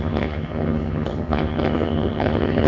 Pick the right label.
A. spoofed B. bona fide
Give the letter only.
A